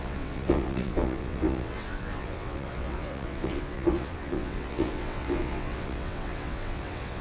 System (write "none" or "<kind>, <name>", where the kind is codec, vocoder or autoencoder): vocoder, WaveNeXt